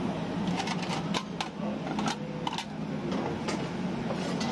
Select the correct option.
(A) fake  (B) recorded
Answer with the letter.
B